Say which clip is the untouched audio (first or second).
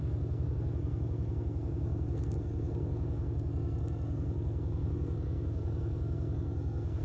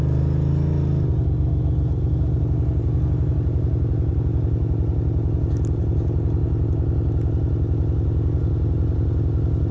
second